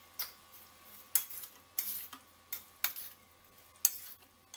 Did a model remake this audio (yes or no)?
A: no